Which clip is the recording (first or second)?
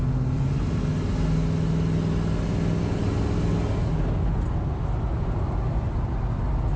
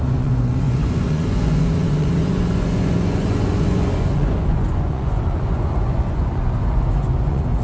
first